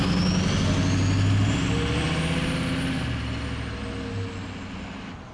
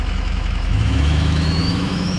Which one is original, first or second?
first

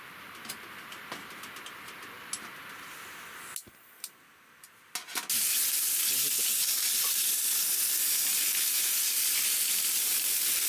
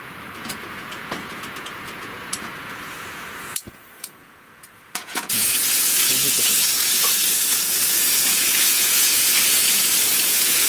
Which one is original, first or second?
first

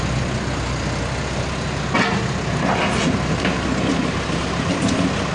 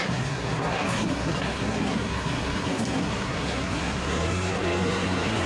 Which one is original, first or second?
first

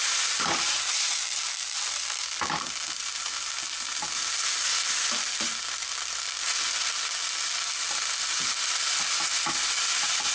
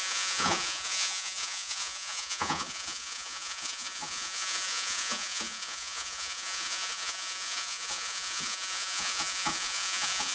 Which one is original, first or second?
first